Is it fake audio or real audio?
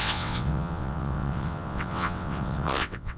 fake